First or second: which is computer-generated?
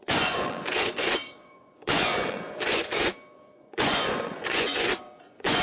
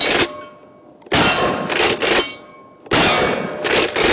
first